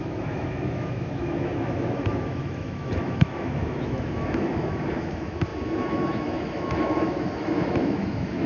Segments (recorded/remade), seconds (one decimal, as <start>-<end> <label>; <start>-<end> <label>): 0.0-8.5 remade